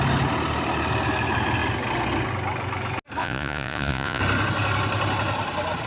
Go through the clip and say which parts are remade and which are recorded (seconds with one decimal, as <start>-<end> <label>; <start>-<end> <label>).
0.0-3.2 recorded; 3.2-4.2 remade; 4.2-5.9 recorded